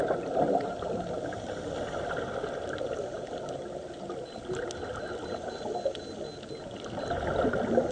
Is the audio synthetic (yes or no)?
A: no